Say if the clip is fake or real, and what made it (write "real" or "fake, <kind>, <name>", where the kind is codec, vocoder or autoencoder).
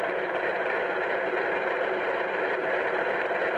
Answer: fake, vocoder, BigVGAN v2